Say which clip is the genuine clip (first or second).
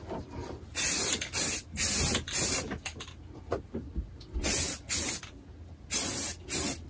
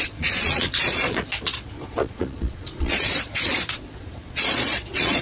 first